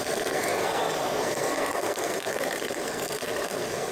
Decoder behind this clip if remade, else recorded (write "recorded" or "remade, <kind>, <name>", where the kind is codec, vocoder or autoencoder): remade, codec, SNAC